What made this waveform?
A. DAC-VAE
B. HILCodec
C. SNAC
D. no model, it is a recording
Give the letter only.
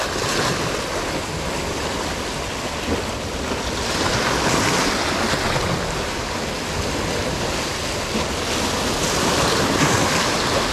D